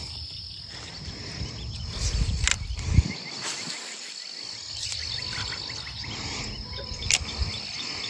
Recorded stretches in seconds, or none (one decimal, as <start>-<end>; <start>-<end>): 0.0-8.1